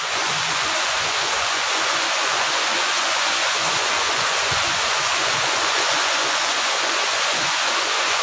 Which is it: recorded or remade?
remade